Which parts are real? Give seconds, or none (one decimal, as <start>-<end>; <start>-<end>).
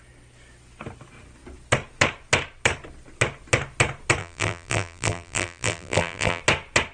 0.0-4.2; 6.4-6.9